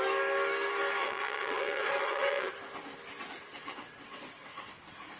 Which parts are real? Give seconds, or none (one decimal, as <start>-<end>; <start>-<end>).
0.0-1.0; 2.5-3.5; 4.7-5.2